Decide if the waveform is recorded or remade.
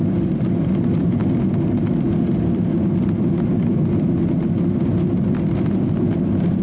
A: recorded